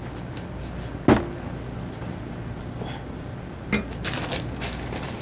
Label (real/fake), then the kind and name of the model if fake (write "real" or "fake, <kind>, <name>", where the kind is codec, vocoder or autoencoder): real